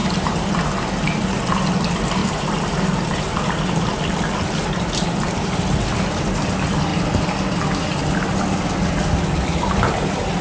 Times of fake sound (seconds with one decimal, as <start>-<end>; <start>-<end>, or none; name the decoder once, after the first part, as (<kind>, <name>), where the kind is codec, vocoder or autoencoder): 0.0-0.6 (vocoder, BigVGAN v2); 2.2-4.0